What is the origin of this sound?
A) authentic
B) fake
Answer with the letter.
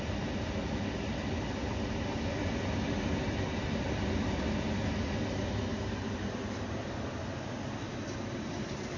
A